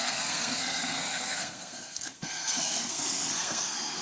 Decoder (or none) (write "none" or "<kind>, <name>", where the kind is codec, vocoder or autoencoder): codec, SNAC